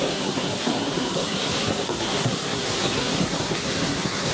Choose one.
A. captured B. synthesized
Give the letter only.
B